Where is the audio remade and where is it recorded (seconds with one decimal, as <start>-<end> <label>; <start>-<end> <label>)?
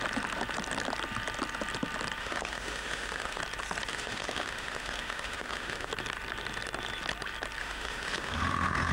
0.0-2.2 recorded; 2.2-3.4 remade; 3.4-3.9 recorded; 3.9-5.9 remade; 5.9-7.6 recorded; 7.6-8.9 remade